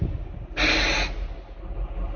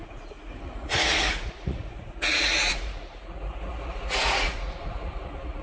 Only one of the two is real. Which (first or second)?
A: first